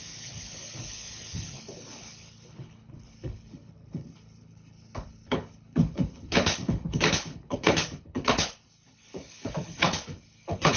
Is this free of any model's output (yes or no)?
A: no